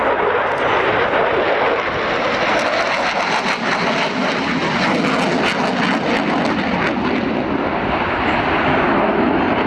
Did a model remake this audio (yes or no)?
no